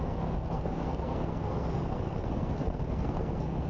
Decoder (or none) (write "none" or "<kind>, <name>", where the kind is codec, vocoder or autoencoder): codec, SNAC